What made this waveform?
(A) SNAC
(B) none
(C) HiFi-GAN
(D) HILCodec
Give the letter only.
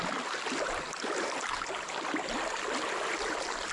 B